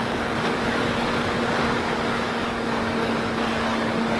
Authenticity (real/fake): fake